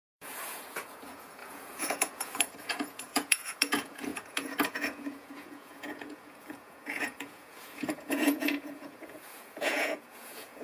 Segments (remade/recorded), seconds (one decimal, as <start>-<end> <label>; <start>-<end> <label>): 0.0-10.6 remade